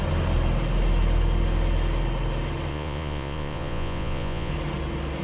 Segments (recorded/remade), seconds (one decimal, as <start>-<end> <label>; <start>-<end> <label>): 0.0-2.7 recorded; 2.7-4.5 remade; 4.5-5.2 recorded